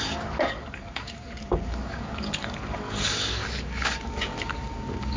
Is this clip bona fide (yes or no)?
no